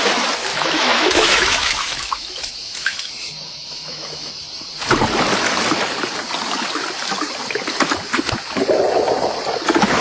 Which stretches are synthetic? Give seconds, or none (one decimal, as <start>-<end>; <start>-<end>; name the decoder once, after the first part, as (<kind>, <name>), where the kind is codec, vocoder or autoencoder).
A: 0.5-4.3 (autoencoder, DAC-VAE)